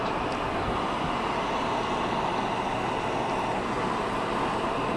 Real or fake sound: real